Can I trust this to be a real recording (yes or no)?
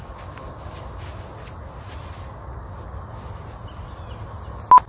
yes